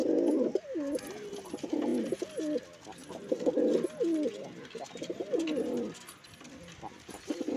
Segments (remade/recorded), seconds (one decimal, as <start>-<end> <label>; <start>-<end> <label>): 0.0-7.6 recorded